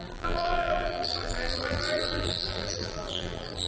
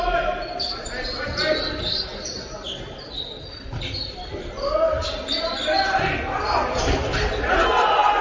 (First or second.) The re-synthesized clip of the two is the first